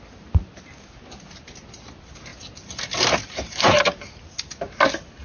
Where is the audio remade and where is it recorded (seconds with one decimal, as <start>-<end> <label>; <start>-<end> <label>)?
0.0-5.2 recorded

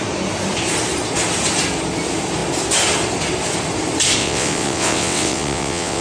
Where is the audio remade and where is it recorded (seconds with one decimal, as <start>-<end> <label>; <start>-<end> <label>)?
0.0-4.2 recorded; 4.2-6.0 remade